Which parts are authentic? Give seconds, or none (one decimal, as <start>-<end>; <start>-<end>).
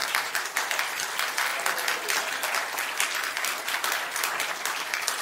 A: 0.8-5.2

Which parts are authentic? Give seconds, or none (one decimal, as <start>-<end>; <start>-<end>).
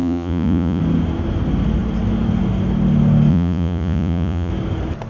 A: 0.8-3.3; 4.5-5.1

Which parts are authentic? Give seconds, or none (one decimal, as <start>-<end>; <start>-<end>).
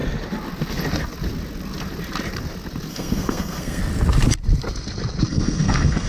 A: 0.0-2.9; 3.8-5.3